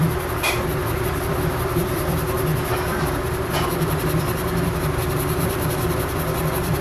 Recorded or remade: remade